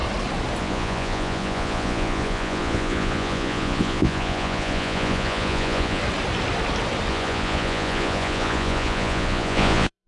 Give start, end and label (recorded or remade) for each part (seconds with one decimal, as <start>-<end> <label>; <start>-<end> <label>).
0.0-0.6 recorded; 0.6-6.0 remade; 6.0-7.1 recorded; 7.1-10.1 remade